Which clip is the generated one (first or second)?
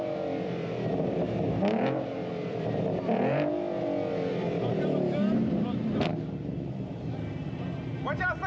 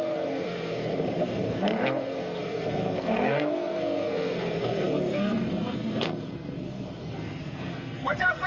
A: second